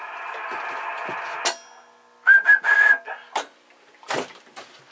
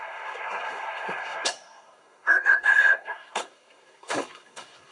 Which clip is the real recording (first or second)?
first